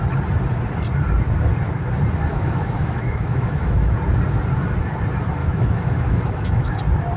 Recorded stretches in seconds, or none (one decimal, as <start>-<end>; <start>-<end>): 0.0-2.3; 3.9-5.4; 6.8-7.2